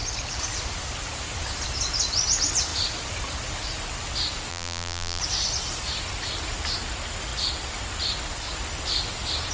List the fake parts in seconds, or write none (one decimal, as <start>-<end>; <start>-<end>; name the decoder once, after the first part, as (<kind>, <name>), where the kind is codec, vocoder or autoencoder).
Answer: 4.5-5.2 (vocoder, BigVGAN v2)

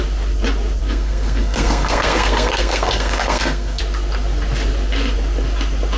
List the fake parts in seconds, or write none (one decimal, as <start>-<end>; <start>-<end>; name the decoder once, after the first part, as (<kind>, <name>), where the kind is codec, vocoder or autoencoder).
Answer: 0.8-3.8 (codec, SNAC)

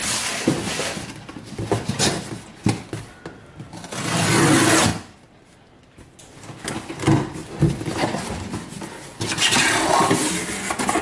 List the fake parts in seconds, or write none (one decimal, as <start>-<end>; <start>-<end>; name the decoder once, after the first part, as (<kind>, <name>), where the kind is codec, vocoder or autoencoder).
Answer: 0.7-1.6 (vocoder, BigVGAN v2); 4.9-6.2; 7.4-8.3

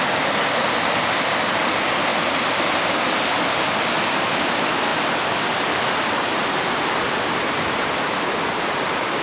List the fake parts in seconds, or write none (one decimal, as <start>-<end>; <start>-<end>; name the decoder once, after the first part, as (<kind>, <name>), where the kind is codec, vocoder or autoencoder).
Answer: none

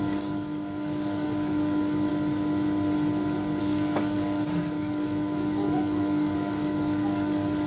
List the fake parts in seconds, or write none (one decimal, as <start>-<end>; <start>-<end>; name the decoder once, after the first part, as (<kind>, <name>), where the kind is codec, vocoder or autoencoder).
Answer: 0.0-2.1 (codec, DAC); 3.6-7.7

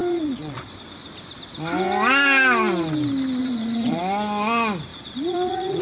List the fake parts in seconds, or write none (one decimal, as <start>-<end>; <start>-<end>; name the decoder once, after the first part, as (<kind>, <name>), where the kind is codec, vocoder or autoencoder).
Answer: 0.0-0.7 (vocoder, Vocos); 3.4-4.0; 4.9-5.8